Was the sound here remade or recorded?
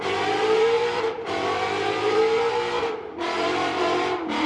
remade